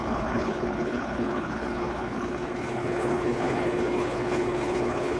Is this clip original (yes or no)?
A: no